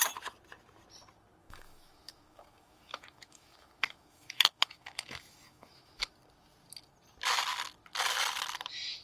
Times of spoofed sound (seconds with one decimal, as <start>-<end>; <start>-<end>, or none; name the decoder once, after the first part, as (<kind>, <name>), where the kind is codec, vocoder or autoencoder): 1.4-6.1 (autoencoder, DAC-VAE)